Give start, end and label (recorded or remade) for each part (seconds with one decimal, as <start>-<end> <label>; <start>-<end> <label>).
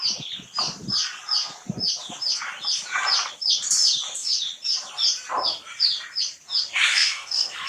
0.0-6.9 recorded; 6.9-7.7 remade